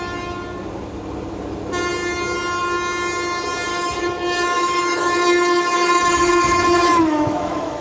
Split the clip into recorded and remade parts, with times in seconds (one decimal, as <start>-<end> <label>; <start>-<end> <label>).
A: 0.0-3.7 recorded; 3.7-7.8 remade